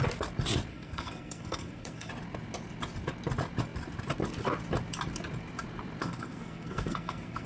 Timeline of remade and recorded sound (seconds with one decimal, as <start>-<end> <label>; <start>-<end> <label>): 0.0-0.7 recorded; 0.7-2.1 remade; 2.1-6.0 recorded; 6.0-7.5 remade